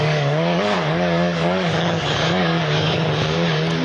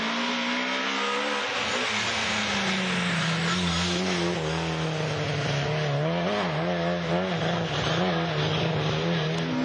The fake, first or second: first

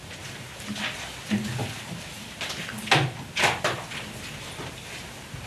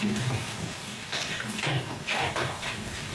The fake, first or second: second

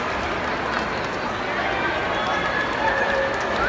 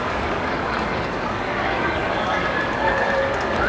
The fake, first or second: second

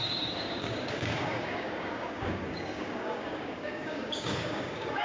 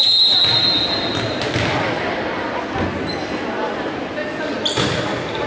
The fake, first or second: first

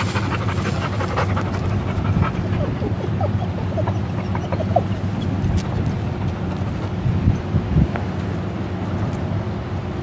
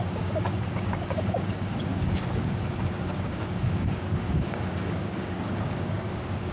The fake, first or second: second